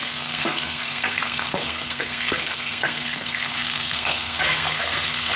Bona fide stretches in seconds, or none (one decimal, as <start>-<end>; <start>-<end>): none